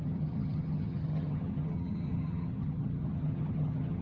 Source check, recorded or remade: remade